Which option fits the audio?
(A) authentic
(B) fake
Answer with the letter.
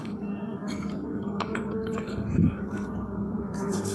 B